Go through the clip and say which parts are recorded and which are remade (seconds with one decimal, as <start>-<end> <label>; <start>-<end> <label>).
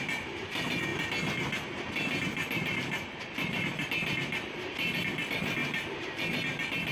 0.0-2.4 recorded; 2.4-5.1 remade; 5.1-5.6 recorded; 5.6-6.2 remade; 6.2-6.9 recorded